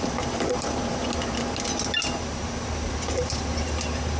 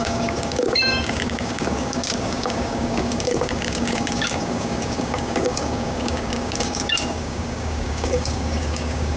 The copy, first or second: second